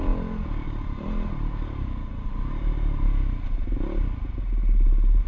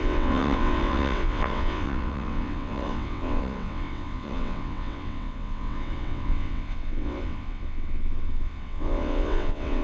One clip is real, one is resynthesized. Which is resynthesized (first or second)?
second